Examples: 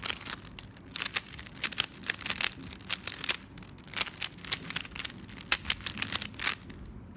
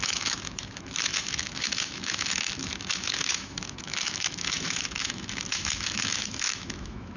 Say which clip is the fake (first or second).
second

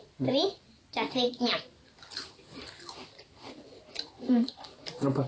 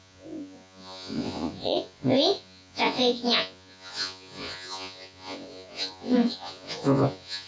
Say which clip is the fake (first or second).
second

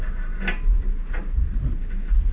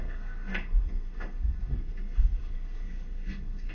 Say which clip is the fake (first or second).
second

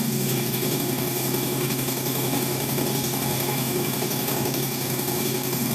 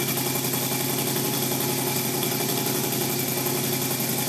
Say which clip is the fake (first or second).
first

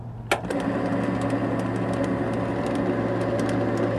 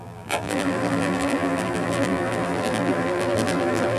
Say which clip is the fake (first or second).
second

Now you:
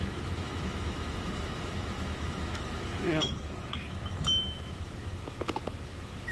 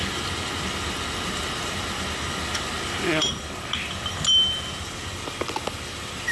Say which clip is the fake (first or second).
first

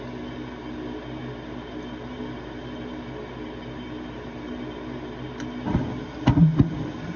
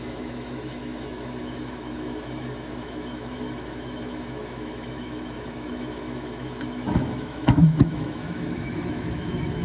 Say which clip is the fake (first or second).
second